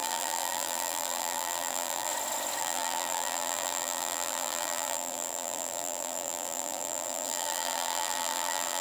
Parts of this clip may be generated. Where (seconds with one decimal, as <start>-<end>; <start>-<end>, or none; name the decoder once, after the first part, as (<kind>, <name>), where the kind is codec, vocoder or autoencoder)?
0.0-2.1 (vocoder, BigVGAN v2); 2.6-8.8